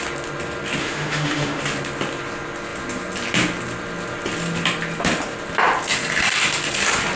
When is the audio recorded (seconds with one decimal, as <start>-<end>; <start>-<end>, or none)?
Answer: 0.0-0.8; 1.6-7.2